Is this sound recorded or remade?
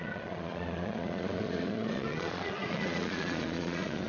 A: remade